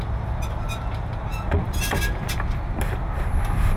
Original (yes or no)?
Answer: yes